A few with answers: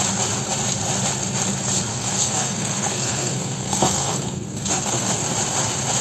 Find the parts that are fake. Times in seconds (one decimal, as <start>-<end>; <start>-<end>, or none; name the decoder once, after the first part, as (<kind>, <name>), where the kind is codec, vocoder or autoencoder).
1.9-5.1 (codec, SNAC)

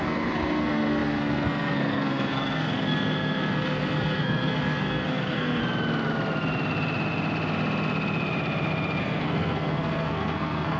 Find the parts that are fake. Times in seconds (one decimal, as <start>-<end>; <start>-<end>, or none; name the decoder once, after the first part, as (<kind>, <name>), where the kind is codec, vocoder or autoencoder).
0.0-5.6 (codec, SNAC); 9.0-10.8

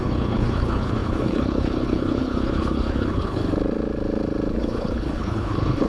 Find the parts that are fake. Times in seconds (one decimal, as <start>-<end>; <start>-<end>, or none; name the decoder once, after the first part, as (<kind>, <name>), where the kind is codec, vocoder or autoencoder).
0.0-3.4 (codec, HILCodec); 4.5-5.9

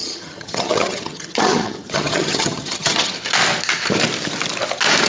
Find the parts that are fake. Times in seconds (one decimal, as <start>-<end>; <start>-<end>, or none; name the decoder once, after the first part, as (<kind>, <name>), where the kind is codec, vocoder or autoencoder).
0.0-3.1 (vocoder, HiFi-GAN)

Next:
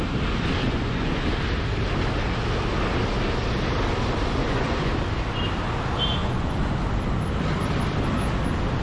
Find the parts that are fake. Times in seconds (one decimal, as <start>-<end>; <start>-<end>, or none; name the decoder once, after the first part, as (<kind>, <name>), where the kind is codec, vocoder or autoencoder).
0.6-1.2 (vocoder, Vocos); 4.4-4.9; 6.2-6.8